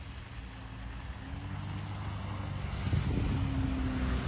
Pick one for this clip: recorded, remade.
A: recorded